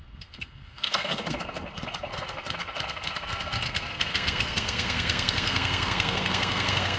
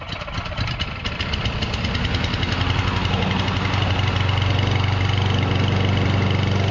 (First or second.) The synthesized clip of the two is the first